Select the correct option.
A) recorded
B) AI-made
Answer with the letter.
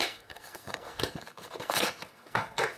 B